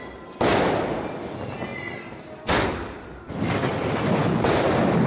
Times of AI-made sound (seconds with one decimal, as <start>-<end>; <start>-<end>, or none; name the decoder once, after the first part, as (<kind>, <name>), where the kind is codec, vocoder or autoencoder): none